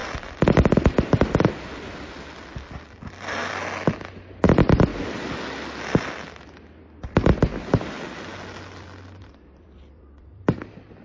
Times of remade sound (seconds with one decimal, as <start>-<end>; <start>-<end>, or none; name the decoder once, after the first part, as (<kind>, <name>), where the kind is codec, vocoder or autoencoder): 0.0-3.4 (vocoder, BigVGAN v2); 4.4-4.9; 6.8-8.3; 8.8-11.0